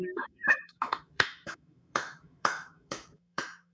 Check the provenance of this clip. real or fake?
fake